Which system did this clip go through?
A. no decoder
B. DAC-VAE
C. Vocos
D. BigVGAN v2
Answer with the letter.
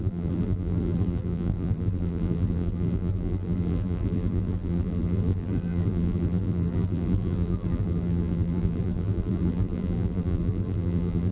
D